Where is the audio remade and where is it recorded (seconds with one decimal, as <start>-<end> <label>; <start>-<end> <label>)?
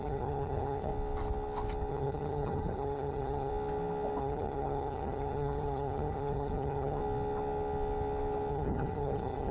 0.0-0.9 remade; 0.9-1.9 recorded; 1.9-3.5 remade; 3.5-4.2 recorded; 4.2-7.0 remade; 7.0-8.5 recorded; 8.5-9.5 remade